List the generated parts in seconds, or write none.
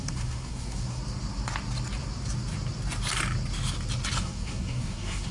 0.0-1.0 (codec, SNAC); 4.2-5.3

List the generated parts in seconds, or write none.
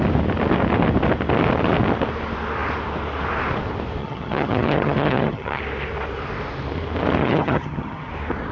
4.0-5.6 (vocoder, HiFi-GAN); 7.2-8.1